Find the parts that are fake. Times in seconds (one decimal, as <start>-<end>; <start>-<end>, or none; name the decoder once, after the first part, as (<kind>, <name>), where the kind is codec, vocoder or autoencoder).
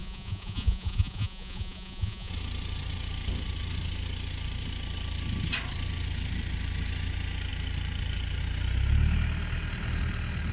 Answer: 0.0-2.3 (vocoder, Vocos)